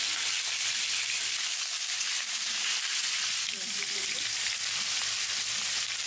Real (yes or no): yes